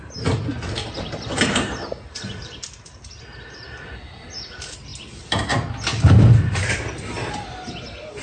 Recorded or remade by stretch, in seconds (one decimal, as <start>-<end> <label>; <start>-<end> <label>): 0.0-0.8 recorded; 0.8-2.6 remade; 2.6-8.2 recorded